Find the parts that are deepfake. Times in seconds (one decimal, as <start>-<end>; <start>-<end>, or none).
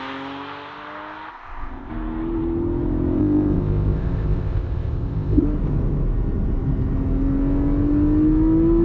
1.3-1.9; 3.2-5.4